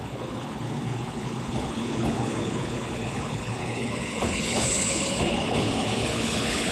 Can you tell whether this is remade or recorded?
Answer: remade